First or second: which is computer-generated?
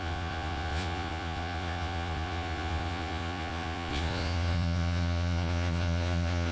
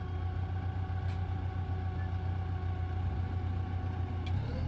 first